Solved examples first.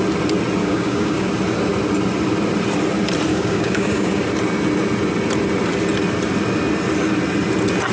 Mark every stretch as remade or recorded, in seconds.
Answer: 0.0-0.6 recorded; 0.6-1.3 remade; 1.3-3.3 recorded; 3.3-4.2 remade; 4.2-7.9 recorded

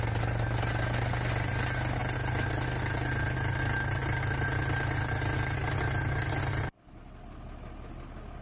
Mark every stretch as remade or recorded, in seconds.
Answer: 0.0-8.4 recorded

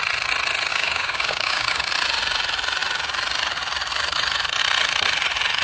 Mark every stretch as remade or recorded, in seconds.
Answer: 0.0-0.7 recorded; 0.7-1.9 remade; 1.9-5.6 recorded

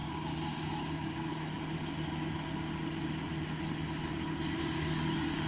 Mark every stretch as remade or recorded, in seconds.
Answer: 0.0-1.3 remade; 1.3-4.6 recorded; 4.6-5.5 remade